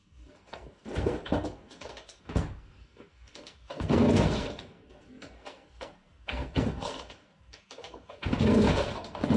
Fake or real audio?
fake